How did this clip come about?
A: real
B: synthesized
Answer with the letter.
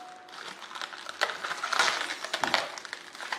A